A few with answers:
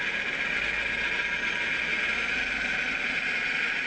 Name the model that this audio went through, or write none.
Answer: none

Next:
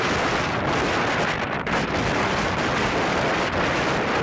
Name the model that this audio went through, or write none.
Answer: none